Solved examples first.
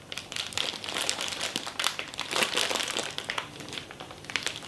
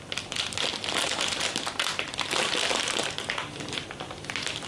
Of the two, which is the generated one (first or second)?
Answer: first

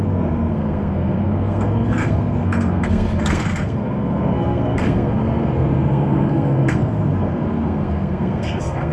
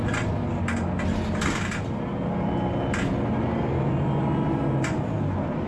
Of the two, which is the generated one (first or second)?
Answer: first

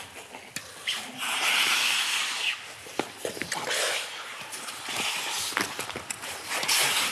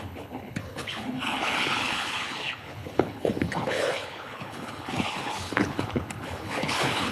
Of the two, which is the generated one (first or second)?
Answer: second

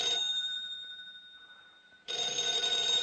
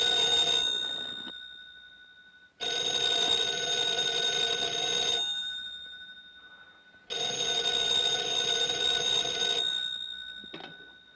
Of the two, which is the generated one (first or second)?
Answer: first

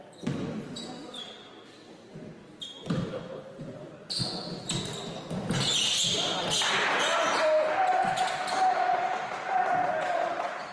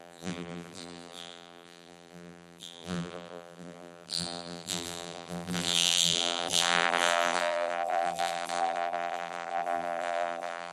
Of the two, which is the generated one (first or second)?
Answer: second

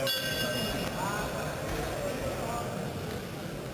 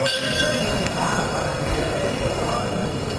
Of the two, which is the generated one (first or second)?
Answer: second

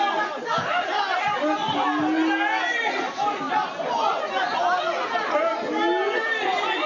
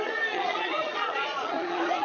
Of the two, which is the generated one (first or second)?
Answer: second